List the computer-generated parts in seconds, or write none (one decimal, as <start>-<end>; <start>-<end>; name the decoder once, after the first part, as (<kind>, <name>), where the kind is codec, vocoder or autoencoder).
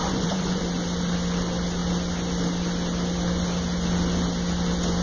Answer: 0.0-0.6 (vocoder, Vocos)